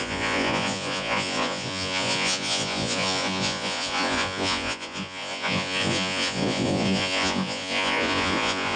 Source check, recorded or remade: remade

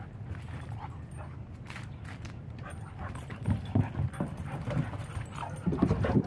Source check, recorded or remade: recorded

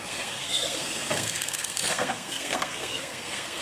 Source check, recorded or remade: remade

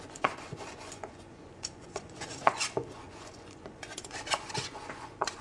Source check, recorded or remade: remade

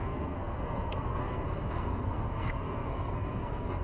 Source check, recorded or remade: remade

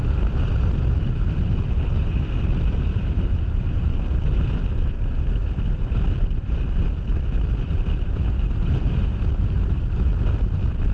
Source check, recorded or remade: recorded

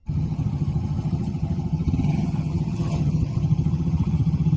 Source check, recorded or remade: remade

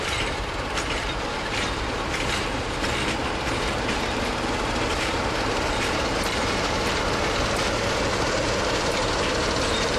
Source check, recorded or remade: remade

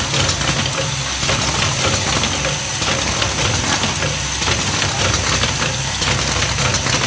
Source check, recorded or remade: recorded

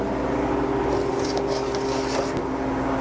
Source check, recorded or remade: recorded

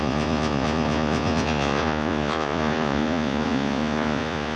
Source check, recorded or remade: remade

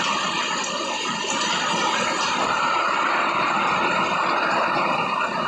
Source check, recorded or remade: recorded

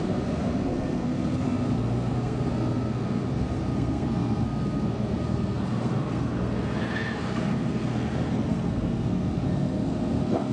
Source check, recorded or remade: remade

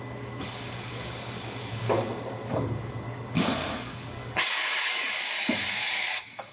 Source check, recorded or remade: remade